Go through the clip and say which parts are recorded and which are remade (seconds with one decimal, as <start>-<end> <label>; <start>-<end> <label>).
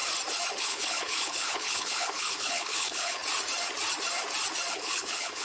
0.0-0.6 recorded; 0.6-3.2 remade; 3.2-4.7 recorded; 4.7-5.4 remade